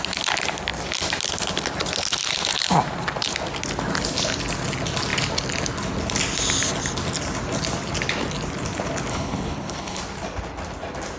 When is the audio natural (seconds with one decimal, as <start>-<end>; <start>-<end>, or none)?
0.0-9.1; 10.0-11.2